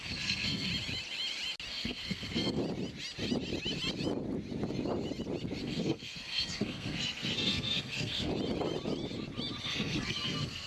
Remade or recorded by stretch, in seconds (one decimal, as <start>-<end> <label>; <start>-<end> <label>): 0.0-0.7 remade; 0.7-1.7 recorded; 1.7-2.6 remade; 2.6-5.6 recorded; 5.6-8.3 remade; 8.3-9.6 recorded; 9.6-10.7 remade